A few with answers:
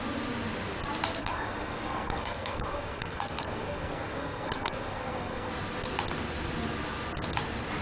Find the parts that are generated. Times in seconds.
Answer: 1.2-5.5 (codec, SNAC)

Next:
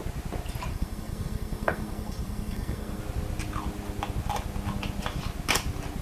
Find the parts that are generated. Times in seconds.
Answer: 0.7-3.0 (codec, SNAC)

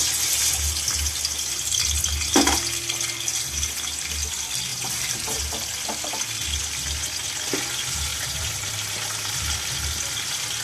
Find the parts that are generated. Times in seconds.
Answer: 4.7-5.4 (vocoder, BigVGAN v2); 8.1-9.3

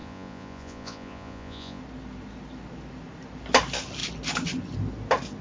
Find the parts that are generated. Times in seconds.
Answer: 0.0-1.8 (vocoder, Vocos)

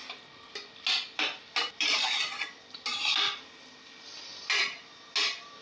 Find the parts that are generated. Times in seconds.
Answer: none

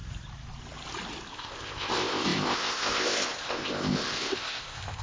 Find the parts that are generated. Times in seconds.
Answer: 1.3-5.0 (codec, ZipCodec)

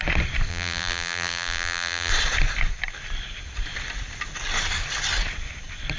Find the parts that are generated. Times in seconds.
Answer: 0.5-2.1 (vocoder, BigVGAN v2)